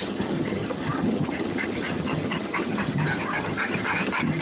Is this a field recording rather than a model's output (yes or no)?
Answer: no